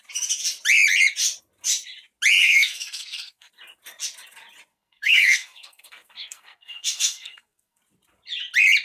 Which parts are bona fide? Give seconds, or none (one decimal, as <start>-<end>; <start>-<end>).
0.0-2.4; 3.5-4.7; 7.8-8.8